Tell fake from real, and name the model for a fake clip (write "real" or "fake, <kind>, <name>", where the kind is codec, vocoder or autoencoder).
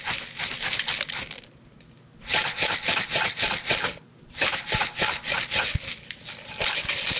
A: real